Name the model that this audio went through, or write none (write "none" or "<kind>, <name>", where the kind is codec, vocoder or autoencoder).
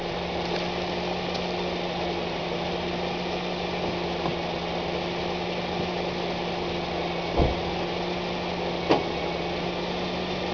none